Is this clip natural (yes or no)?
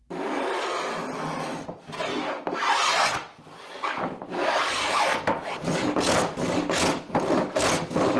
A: yes